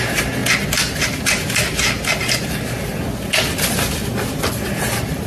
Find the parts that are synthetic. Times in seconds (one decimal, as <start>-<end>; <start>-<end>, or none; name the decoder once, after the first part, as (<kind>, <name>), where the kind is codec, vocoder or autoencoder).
0.0-0.4 (vocoder, BigVGAN v2); 3.4-5.3